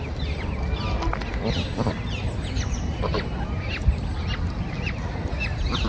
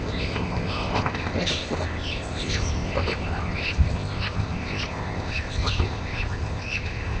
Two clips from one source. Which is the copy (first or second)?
second